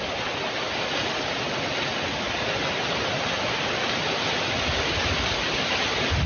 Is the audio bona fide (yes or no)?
yes